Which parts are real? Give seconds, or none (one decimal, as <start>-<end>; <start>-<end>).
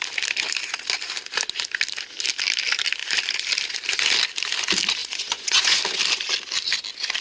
0.0-5.0; 5.8-7.2